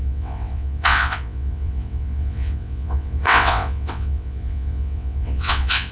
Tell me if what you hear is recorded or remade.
remade